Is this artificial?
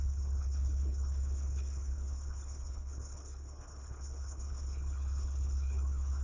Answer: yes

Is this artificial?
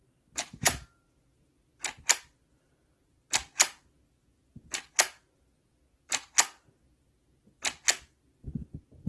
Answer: no